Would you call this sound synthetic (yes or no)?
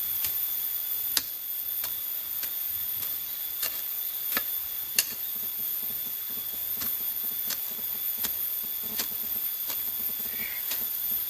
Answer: yes